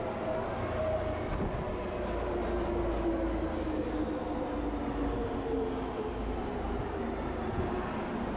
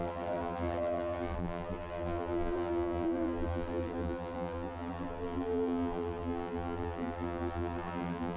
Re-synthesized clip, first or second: second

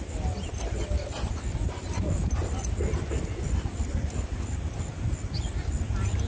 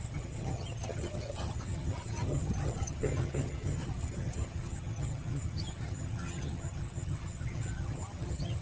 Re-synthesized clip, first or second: second